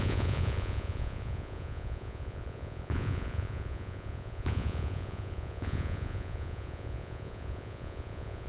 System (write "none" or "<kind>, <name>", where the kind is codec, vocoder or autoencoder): vocoder, Vocos